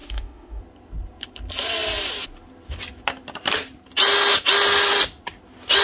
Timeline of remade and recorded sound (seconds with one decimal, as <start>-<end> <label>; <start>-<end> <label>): 0.0-0.6 remade; 0.6-5.8 recorded